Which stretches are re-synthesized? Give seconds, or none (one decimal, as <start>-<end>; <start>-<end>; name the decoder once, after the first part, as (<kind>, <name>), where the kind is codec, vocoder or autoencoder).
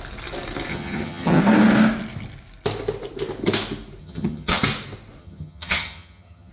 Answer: 0.7-1.4 (vocoder, HiFi-GAN); 4.0-4.6; 5.2-6.5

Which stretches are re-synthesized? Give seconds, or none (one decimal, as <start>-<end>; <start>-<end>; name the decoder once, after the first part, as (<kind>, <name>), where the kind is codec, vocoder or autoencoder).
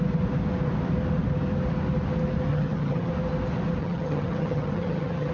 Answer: 2.5-3.1 (vocoder, HiFi-GAN); 3.8-5.3